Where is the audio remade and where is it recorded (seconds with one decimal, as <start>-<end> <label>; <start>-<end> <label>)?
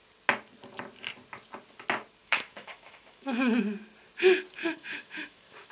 0.0-2.2 recorded; 2.2-3.6 remade; 3.6-4.6 recorded; 4.6-5.7 remade